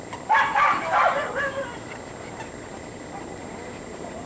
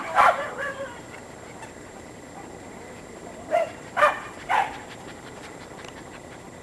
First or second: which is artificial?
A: second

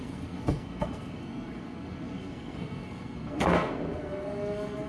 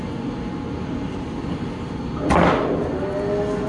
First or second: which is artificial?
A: first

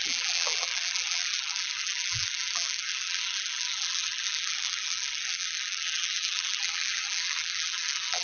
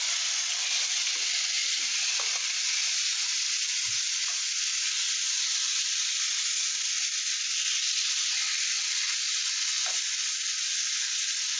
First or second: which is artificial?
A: first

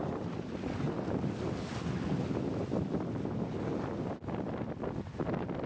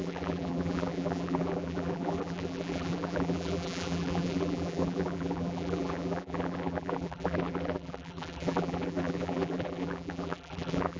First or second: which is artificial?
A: second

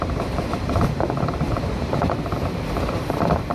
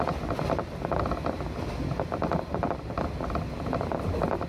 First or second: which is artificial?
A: first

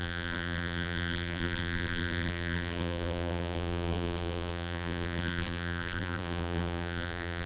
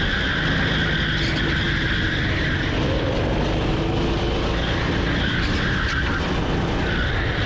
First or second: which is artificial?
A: first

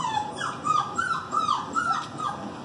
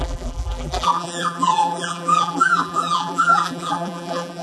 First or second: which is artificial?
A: second